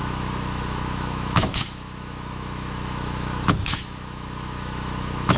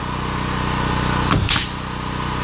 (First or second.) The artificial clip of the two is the first